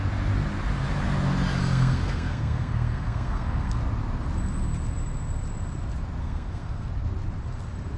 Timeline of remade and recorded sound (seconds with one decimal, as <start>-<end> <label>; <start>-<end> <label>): 0.0-1.6 recorded; 1.6-3.8 remade; 3.8-6.2 recorded; 6.2-6.9 remade; 6.9-8.0 recorded